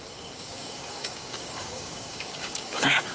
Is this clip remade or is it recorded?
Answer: remade